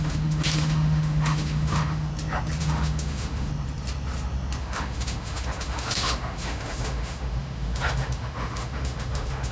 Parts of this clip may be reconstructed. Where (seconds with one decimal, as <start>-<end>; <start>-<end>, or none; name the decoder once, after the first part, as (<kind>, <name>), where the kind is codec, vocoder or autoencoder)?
0.0-2.1 (autoencoder, DAC-VAE); 2.6-3.5; 4.6-9.5